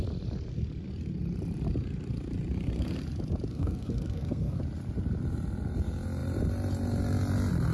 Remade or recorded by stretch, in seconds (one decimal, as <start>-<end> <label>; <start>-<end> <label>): 0.0-3.5 recorded; 3.5-4.6 remade; 4.6-7.7 recorded